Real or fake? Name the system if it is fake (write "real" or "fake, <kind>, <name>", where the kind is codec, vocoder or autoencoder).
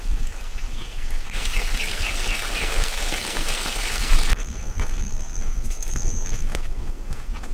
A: fake, codec, SNAC